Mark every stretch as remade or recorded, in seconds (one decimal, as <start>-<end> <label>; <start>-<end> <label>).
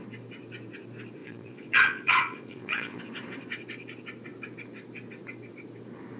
0.0-1.2 recorded; 1.2-3.0 remade; 3.0-6.2 recorded